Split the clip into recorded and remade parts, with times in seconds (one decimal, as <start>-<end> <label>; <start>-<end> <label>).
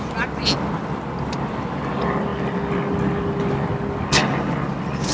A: 0.0-5.1 recorded